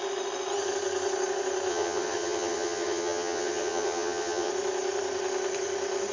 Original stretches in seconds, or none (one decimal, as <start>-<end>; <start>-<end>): 0.0-1.7; 4.5-6.1